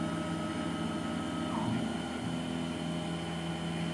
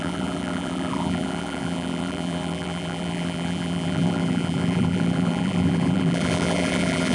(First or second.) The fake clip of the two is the second